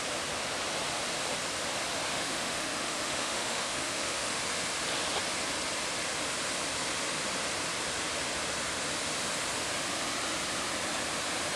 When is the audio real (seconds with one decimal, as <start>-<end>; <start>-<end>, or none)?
0.0-2.1; 4.4-11.6